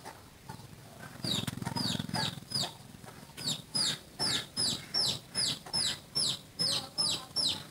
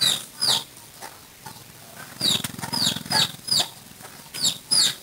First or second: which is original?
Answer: second